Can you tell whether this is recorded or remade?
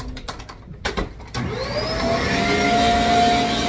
recorded